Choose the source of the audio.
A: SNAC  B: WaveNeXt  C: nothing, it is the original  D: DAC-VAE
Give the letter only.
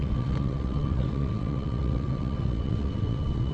B